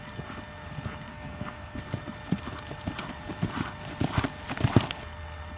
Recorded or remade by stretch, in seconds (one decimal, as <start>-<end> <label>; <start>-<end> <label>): 0.0-1.1 recorded; 1.1-1.8 remade; 1.8-5.6 recorded